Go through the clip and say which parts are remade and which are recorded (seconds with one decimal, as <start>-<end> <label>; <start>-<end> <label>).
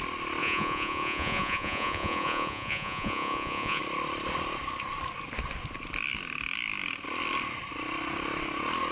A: 0.0-0.4 recorded; 0.4-3.8 remade; 3.8-8.9 recorded